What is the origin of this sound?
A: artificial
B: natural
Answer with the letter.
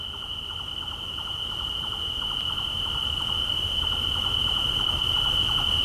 B